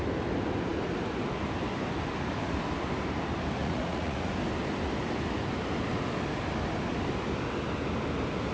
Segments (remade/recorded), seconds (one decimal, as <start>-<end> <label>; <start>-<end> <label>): 0.0-3.6 recorded; 3.6-4.3 remade; 4.3-8.5 recorded